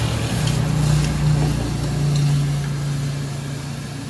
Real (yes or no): yes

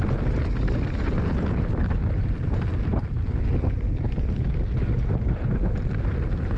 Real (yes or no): yes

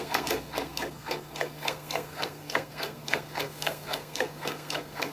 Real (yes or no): no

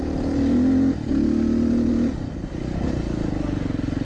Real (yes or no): yes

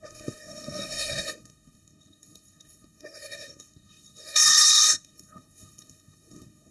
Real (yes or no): no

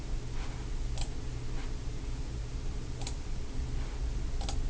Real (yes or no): yes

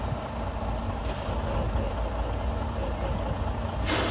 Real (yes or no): yes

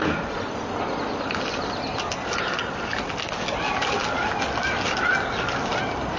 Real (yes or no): yes